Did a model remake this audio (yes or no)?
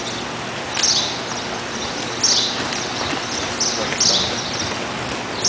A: no